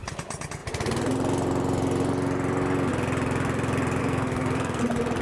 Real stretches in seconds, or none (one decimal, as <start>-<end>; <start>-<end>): 0.0-4.0; 4.8-5.2